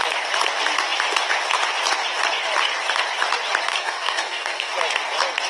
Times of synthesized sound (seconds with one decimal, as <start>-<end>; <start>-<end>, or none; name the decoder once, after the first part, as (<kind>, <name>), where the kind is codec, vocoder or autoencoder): 3.7-4.7 (codec, SNAC)